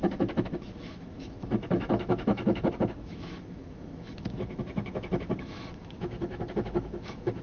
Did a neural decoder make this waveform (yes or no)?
yes